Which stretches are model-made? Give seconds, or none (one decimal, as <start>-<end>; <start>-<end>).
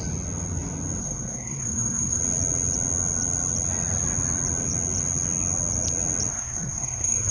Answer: 1.0-2.2; 6.3-7.3